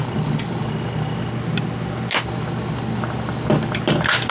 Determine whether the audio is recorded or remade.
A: recorded